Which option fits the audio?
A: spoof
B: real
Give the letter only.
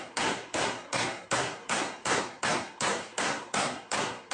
A